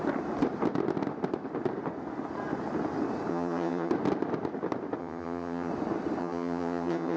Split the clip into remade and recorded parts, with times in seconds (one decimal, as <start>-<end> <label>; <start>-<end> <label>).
0.0-3.3 recorded; 3.3-3.9 remade; 3.9-5.0 recorded; 5.0-5.7 remade; 5.7-6.2 recorded; 6.2-7.2 remade